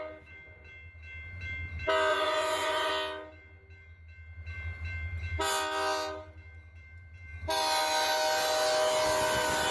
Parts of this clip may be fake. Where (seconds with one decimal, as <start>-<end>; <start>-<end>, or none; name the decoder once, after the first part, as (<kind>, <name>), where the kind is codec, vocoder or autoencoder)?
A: 2.1-2.9 (vocoder, Vocos)